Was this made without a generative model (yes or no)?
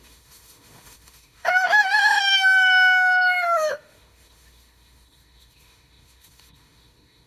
no